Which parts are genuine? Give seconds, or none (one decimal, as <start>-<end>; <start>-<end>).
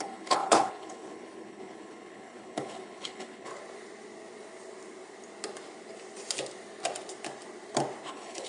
3.5-8.1